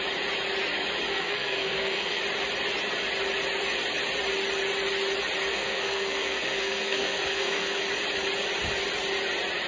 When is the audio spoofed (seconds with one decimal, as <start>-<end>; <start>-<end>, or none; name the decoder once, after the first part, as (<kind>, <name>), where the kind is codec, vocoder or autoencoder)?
1.1-2.2 (codec, SNAC); 5.5-7.8